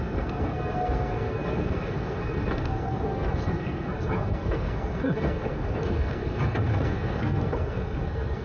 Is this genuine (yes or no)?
no